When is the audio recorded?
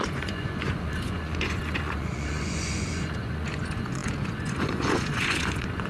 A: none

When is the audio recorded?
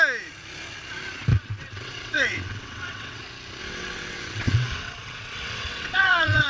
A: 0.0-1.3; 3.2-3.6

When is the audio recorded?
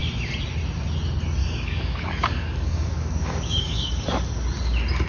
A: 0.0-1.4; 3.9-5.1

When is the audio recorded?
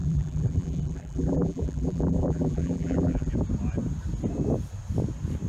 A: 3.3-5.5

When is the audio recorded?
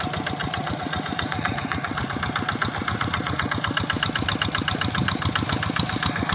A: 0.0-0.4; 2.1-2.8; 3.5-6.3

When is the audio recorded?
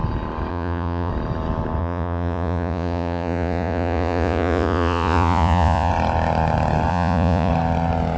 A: 0.0-0.5; 1.1-1.8; 5.9-6.9; 7.5-8.2